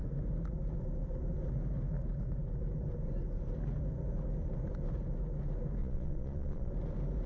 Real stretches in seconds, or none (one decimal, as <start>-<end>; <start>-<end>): 0.0-5.8; 6.7-7.3